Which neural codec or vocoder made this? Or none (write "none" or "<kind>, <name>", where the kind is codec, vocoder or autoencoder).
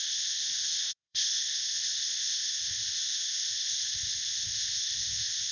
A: codec, ZipCodec